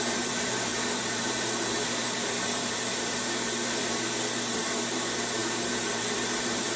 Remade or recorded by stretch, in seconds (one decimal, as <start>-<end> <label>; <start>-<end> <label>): 0.0-3.8 remade; 3.8-4.5 recorded; 4.5-6.8 remade